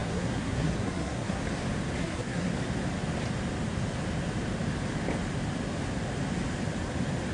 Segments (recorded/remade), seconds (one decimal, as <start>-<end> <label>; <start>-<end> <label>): 0.0-1.4 remade; 1.4-2.0 recorded; 2.0-2.5 remade; 2.5-7.3 recorded